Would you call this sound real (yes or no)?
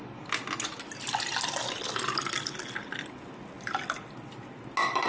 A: yes